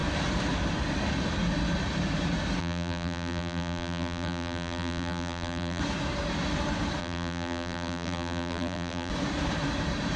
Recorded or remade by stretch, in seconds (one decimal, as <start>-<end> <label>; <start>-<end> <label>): 0.0-2.6 recorded; 2.6-5.8 remade; 5.8-7.0 recorded; 7.0-9.1 remade; 9.1-10.2 recorded